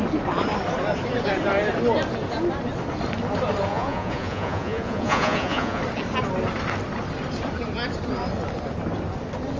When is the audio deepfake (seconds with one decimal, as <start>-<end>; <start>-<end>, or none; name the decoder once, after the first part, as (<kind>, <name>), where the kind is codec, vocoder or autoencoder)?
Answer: 3.7-5.8 (vocoder, Vocos)